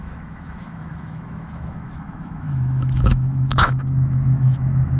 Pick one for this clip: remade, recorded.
remade